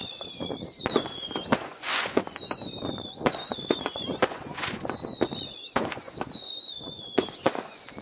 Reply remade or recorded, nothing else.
remade